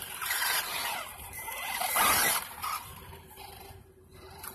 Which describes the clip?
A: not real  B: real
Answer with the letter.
A